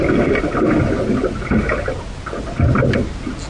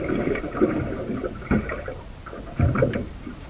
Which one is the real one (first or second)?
first